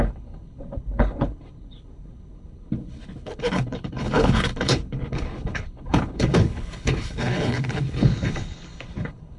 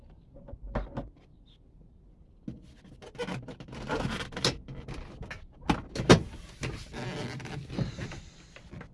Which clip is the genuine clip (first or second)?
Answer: second